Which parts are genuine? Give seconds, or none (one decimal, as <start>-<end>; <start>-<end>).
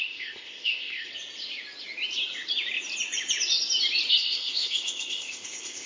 1.1-4.1